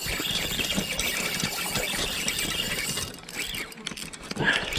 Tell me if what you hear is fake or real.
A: real